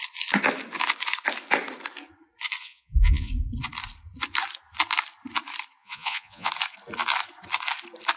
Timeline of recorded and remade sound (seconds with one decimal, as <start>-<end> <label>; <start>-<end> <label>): 0.0-2.6 recorded; 2.6-3.3 remade; 3.3-5.8 recorded; 5.8-6.5 remade; 6.5-8.2 recorded

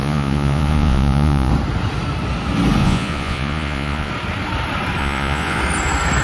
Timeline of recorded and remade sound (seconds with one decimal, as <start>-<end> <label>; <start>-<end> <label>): 0.0-1.5 remade; 1.5-2.8 recorded; 2.8-4.1 remade; 4.1-5.0 recorded; 5.0-5.6 remade; 5.6-6.2 recorded

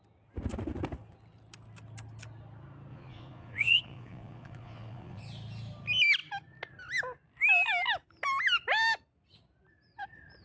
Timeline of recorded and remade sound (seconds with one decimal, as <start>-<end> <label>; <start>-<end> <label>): 0.0-2.9 recorded; 2.9-5.2 remade; 5.2-10.4 recorded

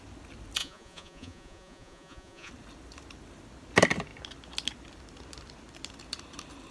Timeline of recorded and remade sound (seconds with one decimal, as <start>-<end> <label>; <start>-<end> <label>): 0.0-0.6 recorded; 0.6-2.5 remade; 2.5-6.7 recorded

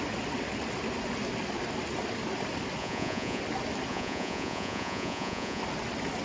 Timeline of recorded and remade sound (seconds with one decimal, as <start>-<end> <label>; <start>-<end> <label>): 0.0-2.8 recorded; 2.8-3.4 remade; 3.4-3.9 recorded; 3.9-5.6 remade; 5.6-6.2 recorded